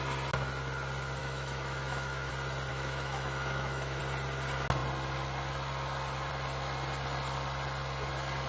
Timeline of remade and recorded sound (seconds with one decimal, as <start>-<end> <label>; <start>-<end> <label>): 0.0-1.2 recorded; 1.2-2.3 remade; 2.3-2.7 recorded; 2.7-4.0 remade; 4.0-8.5 recorded